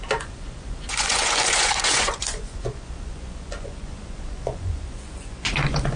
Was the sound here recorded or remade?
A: remade